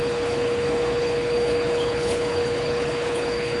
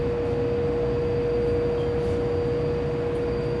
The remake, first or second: first